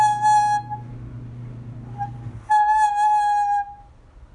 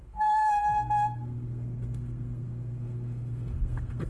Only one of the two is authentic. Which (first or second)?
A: first